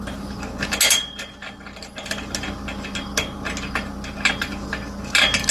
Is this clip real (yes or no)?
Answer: yes